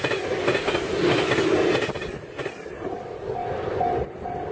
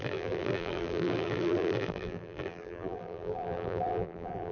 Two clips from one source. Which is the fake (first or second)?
second